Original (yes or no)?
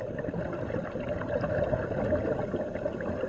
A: yes